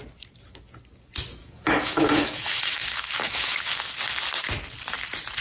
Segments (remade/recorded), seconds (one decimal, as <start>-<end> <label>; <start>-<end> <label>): 0.0-1.4 recorded; 1.4-3.9 remade; 3.9-5.4 recorded